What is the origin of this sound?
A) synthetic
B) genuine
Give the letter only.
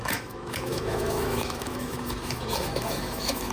A